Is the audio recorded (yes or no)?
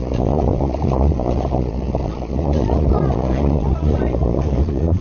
no